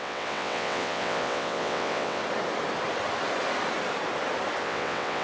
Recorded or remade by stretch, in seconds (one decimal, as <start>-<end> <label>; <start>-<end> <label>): 0.0-2.2 remade; 2.2-4.6 recorded; 4.6-5.2 remade